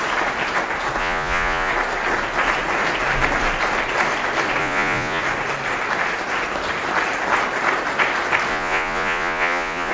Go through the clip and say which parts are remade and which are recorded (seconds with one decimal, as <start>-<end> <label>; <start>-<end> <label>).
0.0-1.0 recorded; 1.0-1.7 remade; 1.7-4.6 recorded; 4.6-5.2 remade; 5.2-8.5 recorded; 8.5-9.9 remade